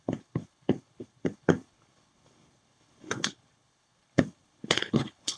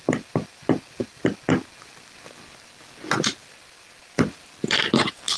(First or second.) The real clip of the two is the second